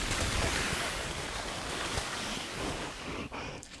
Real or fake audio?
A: fake